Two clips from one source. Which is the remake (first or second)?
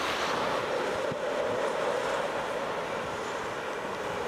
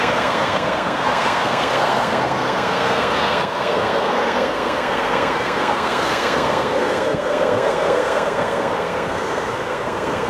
second